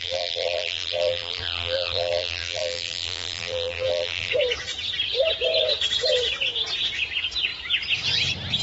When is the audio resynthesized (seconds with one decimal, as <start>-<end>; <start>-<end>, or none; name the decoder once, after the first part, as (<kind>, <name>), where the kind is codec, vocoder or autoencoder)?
0.0-4.3 (vocoder, BigVGAN v2)